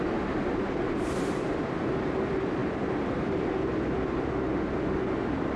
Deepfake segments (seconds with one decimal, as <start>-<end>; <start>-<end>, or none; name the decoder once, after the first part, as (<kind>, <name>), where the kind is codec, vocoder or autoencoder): none